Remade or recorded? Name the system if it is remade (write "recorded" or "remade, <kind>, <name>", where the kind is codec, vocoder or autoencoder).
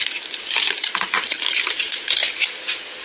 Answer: recorded